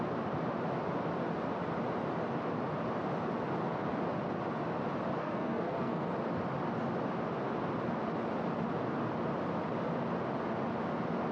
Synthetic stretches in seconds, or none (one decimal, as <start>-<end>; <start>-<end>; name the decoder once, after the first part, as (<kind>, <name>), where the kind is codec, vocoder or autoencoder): 5.2-6.1 (codec, SNAC)